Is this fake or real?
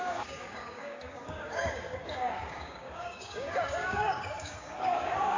fake